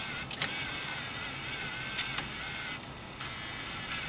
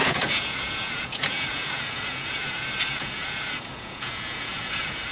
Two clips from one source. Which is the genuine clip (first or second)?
first